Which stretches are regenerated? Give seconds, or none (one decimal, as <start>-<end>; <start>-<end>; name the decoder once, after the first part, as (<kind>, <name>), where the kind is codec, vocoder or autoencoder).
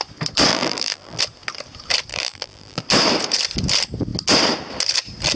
0.5-1.2 (vocoder, BigVGAN v2); 2.1-2.8